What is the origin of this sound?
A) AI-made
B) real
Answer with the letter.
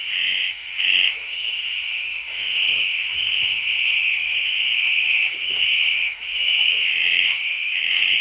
A